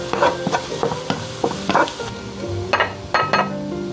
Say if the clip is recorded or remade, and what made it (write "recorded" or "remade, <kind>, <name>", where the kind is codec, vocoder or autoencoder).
recorded